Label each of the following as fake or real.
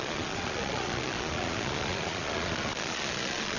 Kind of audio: fake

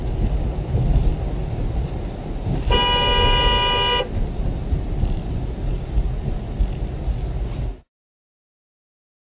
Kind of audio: real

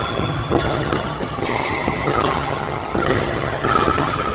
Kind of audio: fake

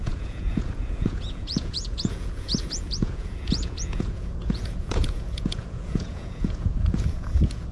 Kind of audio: fake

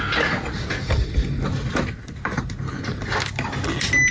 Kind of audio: real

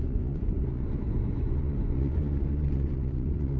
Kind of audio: fake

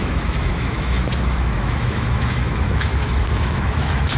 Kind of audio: fake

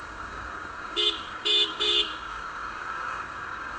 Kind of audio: fake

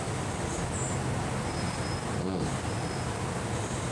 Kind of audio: real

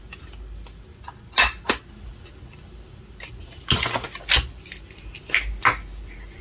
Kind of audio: real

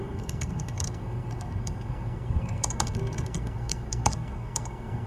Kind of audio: fake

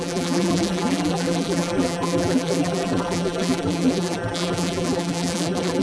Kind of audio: fake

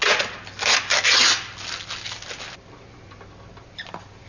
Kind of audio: real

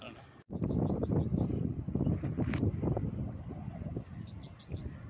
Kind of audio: real